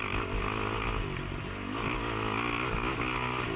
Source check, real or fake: real